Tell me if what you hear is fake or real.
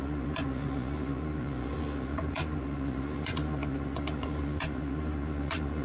fake